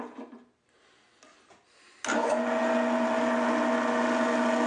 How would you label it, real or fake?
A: real